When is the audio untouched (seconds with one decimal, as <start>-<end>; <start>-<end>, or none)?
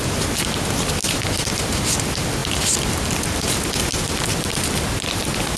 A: 0.0-5.6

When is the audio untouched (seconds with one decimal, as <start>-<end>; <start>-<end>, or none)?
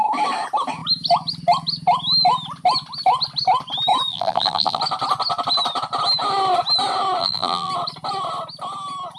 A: 0.0-4.1; 4.8-7.2; 7.7-9.2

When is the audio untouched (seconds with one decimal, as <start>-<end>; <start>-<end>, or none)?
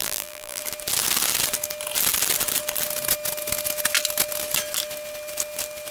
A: 0.6-5.9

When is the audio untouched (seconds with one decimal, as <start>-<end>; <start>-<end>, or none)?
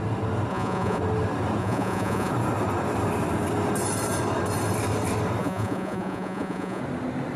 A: 0.0-0.5; 1.0-1.6; 2.3-5.4; 6.8-7.4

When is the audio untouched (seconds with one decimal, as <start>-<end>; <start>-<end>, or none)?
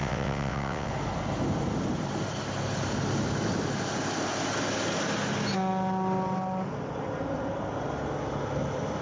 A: 0.9-9.0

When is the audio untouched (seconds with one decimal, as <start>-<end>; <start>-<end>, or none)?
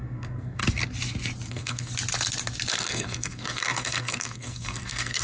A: 0.6-1.5; 1.9-2.7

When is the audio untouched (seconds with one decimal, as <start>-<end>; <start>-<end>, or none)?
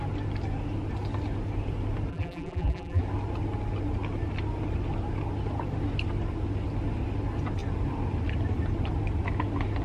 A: 0.0-2.1; 3.0-9.8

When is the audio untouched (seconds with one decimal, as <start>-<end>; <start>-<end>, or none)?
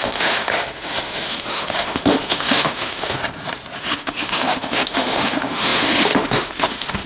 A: 3.2-3.8